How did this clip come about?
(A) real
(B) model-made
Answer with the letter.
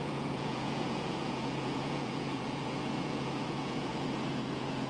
B